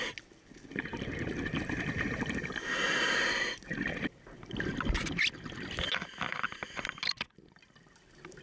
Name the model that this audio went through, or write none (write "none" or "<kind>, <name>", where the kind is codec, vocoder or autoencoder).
none